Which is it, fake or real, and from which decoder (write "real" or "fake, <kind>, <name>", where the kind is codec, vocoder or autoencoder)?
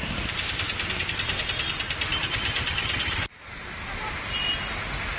real